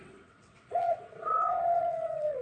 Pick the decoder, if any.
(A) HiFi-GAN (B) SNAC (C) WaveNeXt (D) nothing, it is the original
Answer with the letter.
C